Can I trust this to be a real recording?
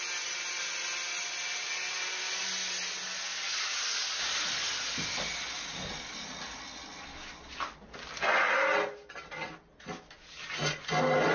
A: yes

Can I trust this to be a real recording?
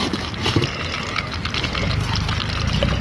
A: yes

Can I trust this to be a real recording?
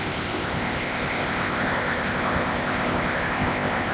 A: no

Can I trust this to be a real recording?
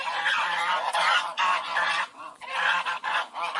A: no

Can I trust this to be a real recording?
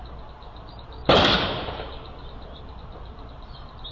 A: yes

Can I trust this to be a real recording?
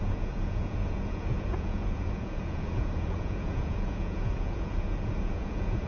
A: no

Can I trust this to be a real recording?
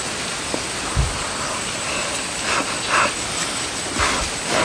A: yes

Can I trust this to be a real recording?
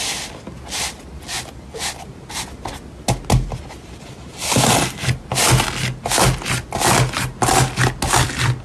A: yes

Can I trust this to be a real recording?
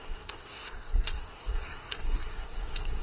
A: no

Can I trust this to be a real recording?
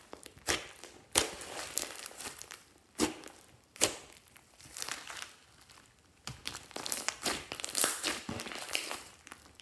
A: no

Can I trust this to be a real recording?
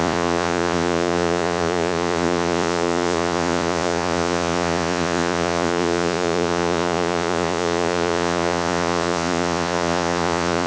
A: no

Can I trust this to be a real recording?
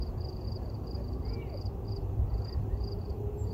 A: no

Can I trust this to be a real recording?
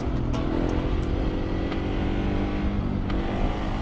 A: yes